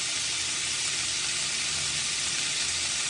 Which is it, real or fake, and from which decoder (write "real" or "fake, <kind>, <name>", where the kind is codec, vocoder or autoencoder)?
real